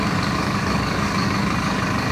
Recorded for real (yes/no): no